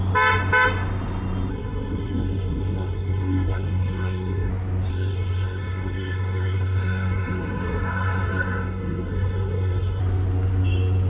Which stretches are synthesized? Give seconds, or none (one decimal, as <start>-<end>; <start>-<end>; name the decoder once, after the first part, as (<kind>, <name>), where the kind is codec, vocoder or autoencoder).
1.5-4.5 (codec, SNAC); 4.9-10.0